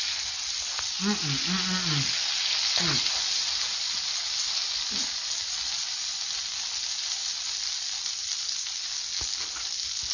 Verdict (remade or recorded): recorded